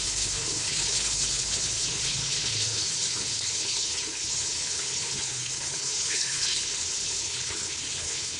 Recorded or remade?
remade